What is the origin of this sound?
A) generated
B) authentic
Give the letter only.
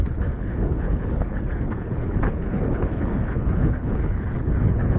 A